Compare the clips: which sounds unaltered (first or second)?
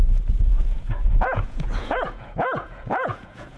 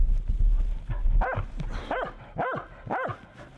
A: second